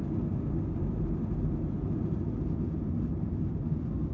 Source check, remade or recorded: recorded